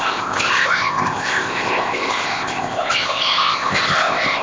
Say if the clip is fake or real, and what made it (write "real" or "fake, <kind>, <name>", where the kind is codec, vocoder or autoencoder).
fake, codec, ZipCodec